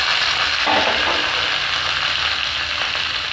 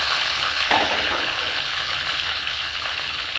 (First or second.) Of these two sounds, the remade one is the second